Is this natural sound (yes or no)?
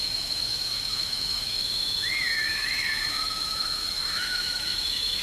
no